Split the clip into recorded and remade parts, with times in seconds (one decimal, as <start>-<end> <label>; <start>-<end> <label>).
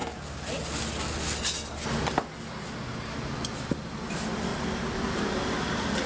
0.0-3.7 recorded; 3.7-4.5 remade; 4.5-5.3 recorded; 5.3-6.1 remade